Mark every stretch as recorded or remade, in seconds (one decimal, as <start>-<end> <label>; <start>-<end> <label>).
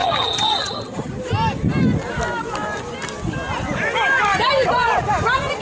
0.0-1.1 remade; 1.1-5.6 recorded